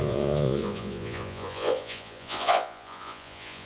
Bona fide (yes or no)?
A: no